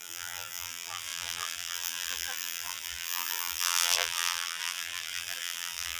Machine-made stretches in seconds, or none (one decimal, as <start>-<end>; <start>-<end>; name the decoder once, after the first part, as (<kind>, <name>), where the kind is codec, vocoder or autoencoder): 0.0-6.0 (vocoder, BigVGAN v2)